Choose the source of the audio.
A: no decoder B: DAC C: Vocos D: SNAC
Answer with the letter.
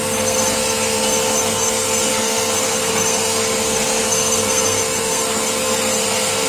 D